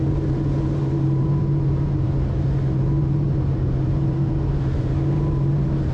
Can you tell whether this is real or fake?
fake